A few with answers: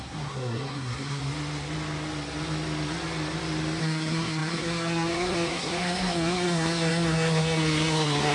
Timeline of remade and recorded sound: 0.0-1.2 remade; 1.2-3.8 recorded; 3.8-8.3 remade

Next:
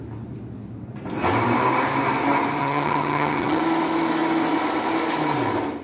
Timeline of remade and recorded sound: 0.0-2.6 recorded; 2.6-3.6 remade; 3.6-5.8 recorded

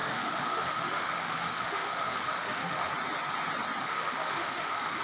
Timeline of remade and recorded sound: 0.0-2.9 remade; 2.9-3.8 recorded; 3.8-5.0 remade

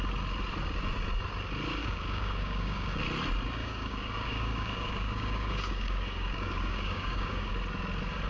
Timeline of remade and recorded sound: 0.0-1.8 recorded; 1.8-3.0 remade; 3.0-3.6 recorded; 3.6-7.5 remade; 7.5-8.3 recorded

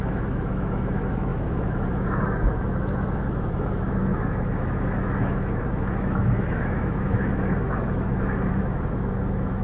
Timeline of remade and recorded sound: 0.0-9.6 remade